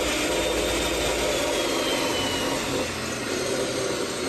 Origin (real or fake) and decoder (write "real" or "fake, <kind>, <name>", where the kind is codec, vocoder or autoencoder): real